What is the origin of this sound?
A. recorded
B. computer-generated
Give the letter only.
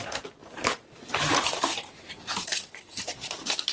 B